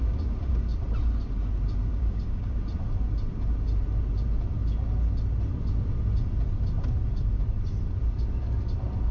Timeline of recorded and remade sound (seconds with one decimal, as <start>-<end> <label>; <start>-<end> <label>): 0.0-1.9 recorded; 1.9-2.6 remade; 2.6-9.1 recorded